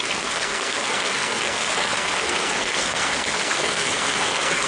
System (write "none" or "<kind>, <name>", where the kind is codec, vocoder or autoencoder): codec, SNAC